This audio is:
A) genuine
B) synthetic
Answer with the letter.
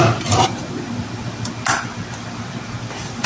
A